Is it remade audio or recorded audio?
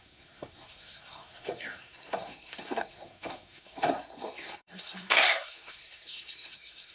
remade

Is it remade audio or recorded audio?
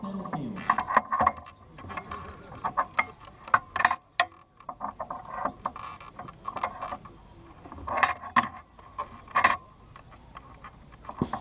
recorded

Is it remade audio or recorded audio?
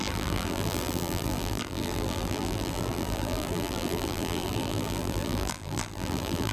remade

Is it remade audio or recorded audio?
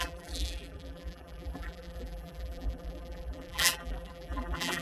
remade